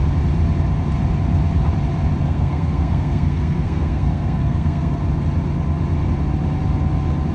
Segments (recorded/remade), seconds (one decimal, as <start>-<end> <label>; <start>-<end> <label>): 0.0-2.2 recorded; 2.2-5.0 remade; 5.0-7.3 recorded